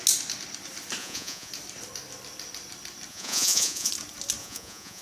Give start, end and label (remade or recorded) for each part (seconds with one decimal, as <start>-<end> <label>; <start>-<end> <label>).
0.0-1.0 recorded; 1.0-1.5 remade; 1.5-3.1 recorded; 3.1-3.9 remade; 3.9-4.4 recorded; 4.4-5.0 remade